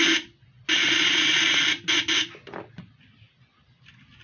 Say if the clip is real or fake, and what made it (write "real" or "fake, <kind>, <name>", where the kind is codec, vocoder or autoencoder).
real